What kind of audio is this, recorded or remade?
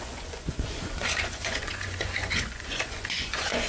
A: remade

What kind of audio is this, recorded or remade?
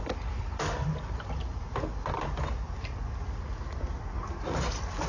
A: recorded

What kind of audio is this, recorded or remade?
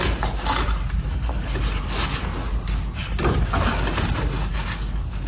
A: recorded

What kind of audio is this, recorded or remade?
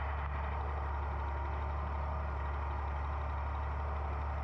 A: recorded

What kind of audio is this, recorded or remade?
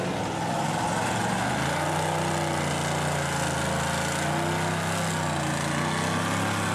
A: recorded